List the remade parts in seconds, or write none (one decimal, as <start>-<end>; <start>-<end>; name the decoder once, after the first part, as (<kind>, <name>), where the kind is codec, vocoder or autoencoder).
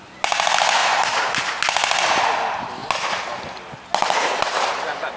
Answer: 0.8-1.5 (vocoder, BigVGAN v2)